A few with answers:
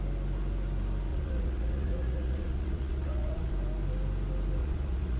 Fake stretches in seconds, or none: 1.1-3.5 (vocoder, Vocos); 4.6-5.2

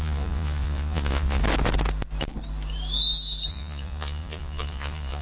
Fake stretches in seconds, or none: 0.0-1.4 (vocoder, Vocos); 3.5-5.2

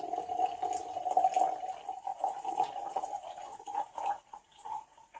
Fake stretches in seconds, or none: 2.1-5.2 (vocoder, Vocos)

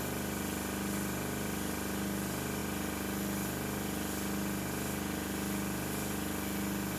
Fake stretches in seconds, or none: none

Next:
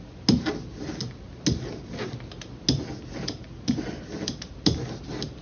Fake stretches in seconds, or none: none